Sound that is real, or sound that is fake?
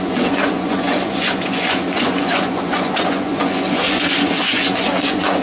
fake